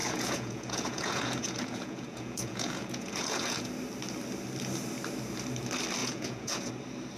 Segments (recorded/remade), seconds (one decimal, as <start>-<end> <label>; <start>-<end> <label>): 0.0-3.7 remade; 3.7-6.0 recorded; 6.0-6.7 remade; 6.7-7.2 recorded